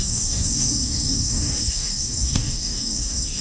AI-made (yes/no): yes